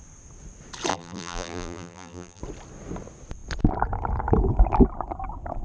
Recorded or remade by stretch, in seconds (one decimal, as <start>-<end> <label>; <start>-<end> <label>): 0.0-0.9 recorded; 0.9-2.4 remade; 2.4-5.6 recorded